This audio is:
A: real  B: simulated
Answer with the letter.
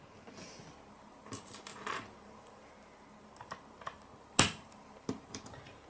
B